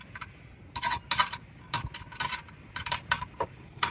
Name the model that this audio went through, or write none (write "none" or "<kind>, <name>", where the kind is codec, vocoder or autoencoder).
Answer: none